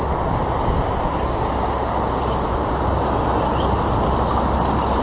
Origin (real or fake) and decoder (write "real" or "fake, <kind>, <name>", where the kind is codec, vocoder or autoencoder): real